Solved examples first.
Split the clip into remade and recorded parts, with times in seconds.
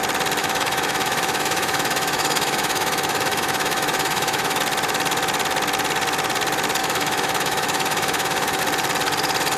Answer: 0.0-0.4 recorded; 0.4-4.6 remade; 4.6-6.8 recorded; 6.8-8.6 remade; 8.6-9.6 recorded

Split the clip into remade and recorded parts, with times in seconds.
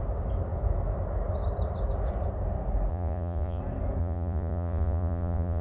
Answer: 0.0-2.9 recorded; 2.9-3.6 remade; 3.6-4.0 recorded; 4.0-5.6 remade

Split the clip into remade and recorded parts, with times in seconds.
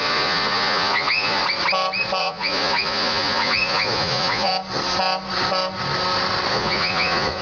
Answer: 0.0-1.4 remade; 1.4-2.2 recorded; 2.2-4.5 remade; 4.5-6.5 recorded; 6.5-7.4 remade